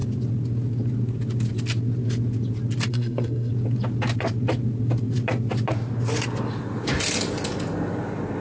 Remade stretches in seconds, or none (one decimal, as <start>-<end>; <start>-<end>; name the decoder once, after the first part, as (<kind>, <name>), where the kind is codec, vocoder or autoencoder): 2.9-3.5 (codec, SNAC)